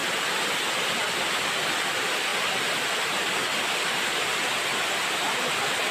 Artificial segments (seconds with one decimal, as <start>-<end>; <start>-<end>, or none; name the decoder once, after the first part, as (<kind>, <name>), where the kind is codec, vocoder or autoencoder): none